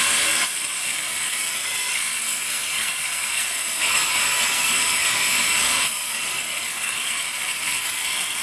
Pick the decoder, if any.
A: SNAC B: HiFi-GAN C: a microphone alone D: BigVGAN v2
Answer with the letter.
A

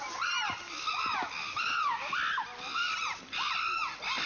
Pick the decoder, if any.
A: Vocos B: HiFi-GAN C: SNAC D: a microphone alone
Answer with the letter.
D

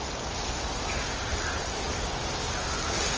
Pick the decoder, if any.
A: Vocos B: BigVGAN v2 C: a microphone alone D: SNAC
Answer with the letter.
C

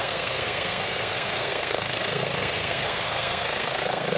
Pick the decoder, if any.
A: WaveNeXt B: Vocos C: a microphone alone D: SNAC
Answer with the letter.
D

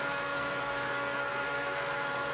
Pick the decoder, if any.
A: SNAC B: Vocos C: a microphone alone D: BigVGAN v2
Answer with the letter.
A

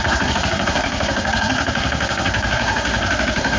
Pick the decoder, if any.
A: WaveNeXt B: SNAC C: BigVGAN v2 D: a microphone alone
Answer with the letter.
B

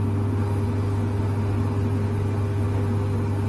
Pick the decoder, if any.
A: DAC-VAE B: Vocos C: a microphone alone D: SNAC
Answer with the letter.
C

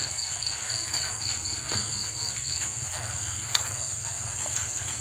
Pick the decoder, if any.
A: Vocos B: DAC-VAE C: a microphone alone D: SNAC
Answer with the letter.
D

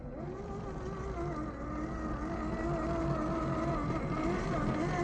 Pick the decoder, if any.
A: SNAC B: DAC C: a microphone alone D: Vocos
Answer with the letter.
C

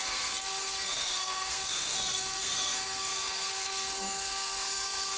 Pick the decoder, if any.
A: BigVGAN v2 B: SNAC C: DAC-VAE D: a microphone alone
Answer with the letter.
B